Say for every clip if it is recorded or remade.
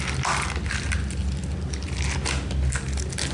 recorded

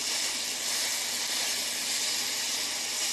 recorded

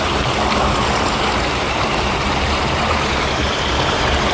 remade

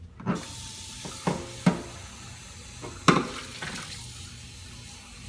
recorded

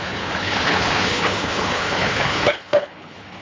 remade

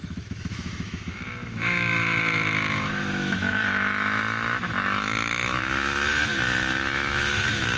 remade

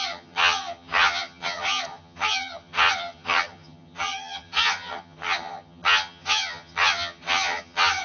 remade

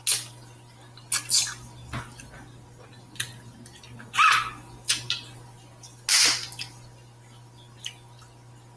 recorded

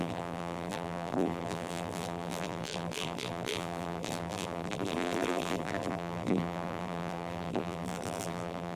remade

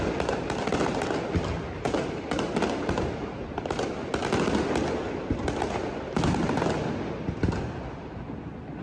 recorded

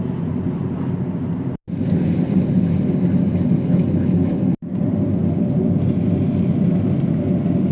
recorded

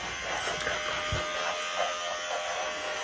recorded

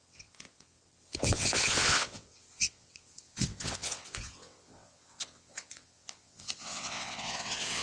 remade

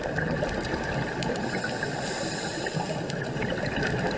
remade